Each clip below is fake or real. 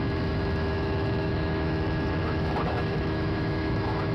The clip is fake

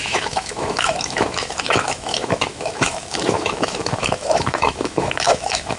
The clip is fake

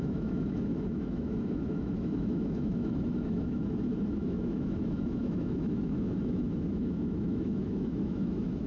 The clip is fake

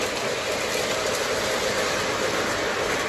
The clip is real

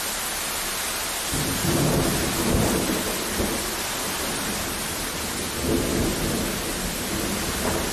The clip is real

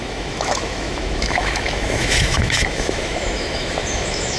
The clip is fake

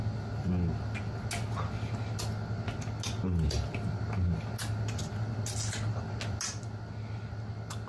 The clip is real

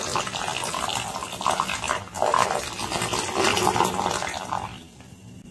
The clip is real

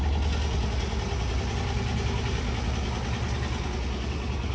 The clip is real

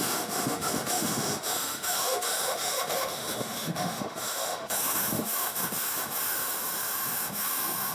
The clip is fake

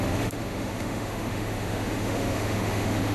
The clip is fake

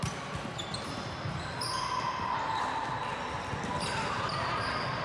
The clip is real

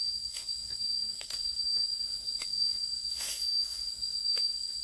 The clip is fake